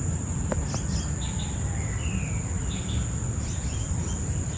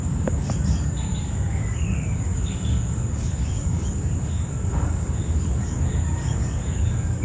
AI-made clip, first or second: second